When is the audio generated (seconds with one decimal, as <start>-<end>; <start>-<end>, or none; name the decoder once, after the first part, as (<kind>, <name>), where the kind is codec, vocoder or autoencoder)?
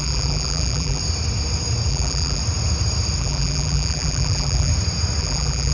0.0-1.0 (vocoder, BigVGAN v2); 1.9-2.4; 3.2-4.7; 5.2-5.7